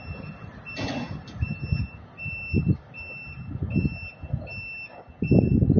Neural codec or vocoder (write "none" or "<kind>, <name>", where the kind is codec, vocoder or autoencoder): none